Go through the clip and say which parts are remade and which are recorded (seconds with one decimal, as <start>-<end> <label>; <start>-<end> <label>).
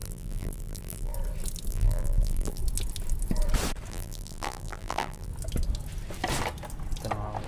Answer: 0.0-1.1 remade; 1.1-1.7 recorded; 1.7-2.6 remade; 2.6-3.9 recorded; 3.9-5.3 remade; 5.3-7.5 recorded